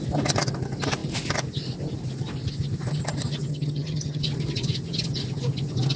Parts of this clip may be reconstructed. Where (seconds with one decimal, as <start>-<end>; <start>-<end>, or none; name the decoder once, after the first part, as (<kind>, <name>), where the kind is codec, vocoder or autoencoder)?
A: 3.5-4.2 (vocoder, HiFi-GAN)